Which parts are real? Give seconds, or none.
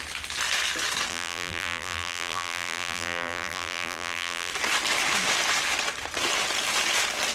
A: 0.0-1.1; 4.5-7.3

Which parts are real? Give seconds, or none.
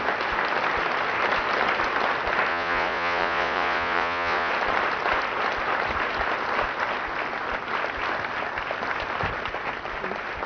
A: 0.0-2.5; 4.5-10.5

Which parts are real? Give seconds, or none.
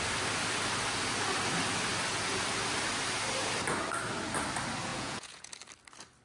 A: 0.0-4.9; 5.5-6.2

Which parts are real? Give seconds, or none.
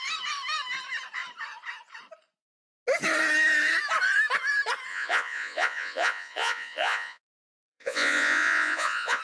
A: 0.0-4.9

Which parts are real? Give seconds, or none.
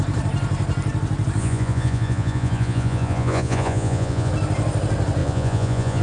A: 0.0-1.4; 4.3-5.2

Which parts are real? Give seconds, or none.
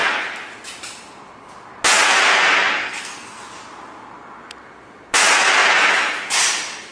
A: 0.0-2.8; 3.4-6.9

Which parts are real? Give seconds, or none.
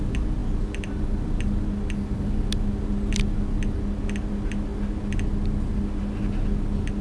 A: 0.0-7.0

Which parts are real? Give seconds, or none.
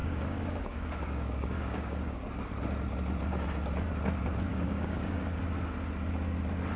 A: 2.3-4.5; 5.4-6.8